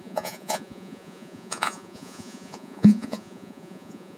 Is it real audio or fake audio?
fake